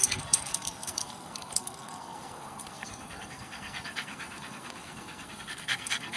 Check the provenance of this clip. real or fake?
fake